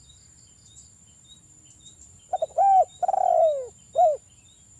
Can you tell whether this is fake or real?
real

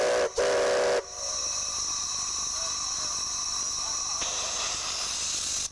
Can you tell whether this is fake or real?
real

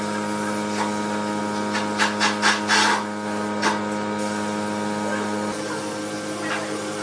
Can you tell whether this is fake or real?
real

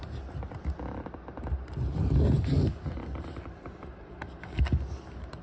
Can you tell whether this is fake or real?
real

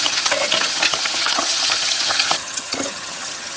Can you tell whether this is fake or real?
fake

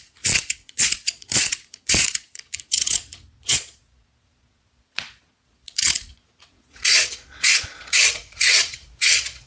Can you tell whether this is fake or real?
fake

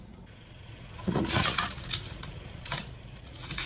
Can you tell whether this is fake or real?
fake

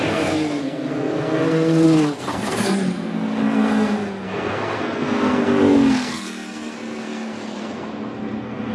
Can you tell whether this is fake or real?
fake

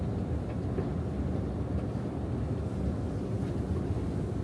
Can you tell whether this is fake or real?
real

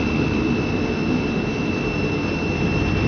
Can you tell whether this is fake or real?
real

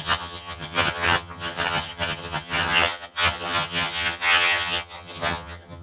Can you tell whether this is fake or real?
fake